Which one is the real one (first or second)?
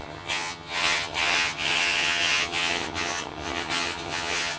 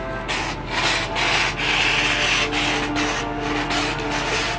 second